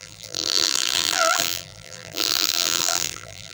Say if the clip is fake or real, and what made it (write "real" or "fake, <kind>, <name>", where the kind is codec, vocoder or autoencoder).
fake, vocoder, BigVGAN v2